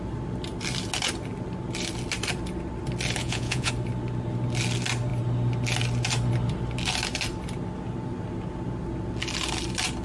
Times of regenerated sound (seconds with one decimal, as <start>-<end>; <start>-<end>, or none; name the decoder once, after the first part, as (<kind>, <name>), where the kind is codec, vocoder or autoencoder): 3.2-3.7 (vocoder, Vocos)